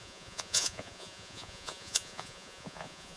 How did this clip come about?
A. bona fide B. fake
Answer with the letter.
B